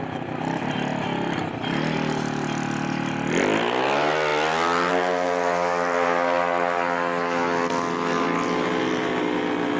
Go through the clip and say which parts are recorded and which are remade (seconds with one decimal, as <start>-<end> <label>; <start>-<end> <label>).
0.0-9.8 recorded